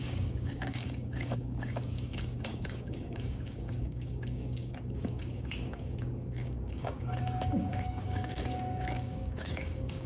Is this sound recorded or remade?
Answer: remade